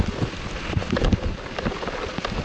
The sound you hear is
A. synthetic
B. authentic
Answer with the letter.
B